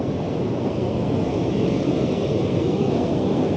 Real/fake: fake